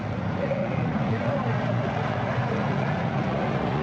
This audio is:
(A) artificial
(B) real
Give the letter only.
A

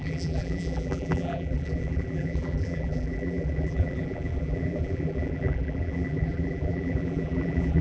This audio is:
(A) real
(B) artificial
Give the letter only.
B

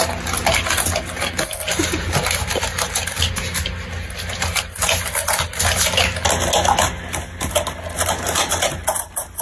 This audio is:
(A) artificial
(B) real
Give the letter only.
B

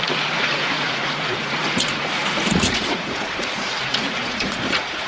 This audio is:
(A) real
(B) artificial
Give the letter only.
B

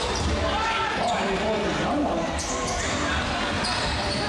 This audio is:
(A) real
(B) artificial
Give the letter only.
B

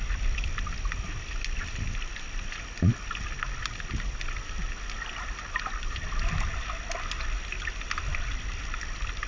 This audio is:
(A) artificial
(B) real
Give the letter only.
B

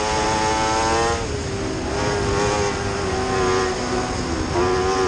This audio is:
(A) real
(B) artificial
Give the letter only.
A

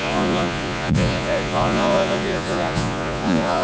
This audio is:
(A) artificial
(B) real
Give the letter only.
A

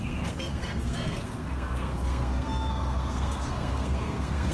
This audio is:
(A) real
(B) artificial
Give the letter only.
B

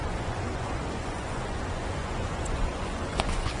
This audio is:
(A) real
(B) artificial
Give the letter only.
B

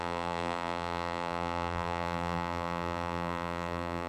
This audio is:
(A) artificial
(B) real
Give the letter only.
A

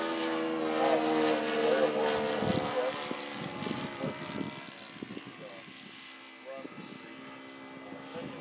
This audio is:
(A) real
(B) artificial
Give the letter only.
A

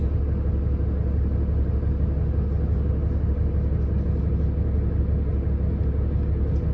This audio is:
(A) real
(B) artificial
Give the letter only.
A